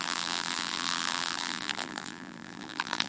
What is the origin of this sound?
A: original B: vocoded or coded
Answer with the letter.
B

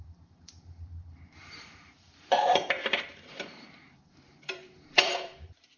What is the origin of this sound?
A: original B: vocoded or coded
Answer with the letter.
B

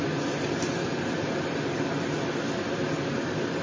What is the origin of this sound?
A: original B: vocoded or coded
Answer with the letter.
A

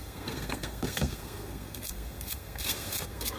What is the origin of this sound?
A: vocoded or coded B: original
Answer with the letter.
A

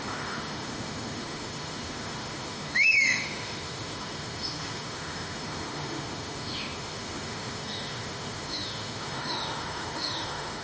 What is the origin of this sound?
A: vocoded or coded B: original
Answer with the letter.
A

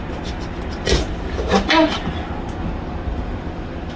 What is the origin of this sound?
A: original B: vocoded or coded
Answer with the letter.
B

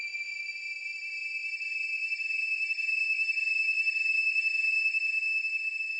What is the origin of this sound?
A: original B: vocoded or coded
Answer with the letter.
A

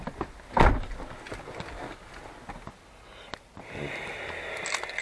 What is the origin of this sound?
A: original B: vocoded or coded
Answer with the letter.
A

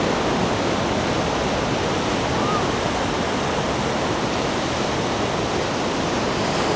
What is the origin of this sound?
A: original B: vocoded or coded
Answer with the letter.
A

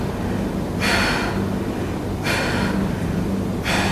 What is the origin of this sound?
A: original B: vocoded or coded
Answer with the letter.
A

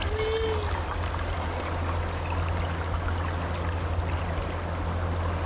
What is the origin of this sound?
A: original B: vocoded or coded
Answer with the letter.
A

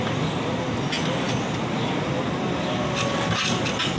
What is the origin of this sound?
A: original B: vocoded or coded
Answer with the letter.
A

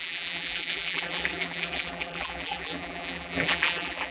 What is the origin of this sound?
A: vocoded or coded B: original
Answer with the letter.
A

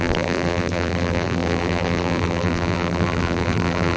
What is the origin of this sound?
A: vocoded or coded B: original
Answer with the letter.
A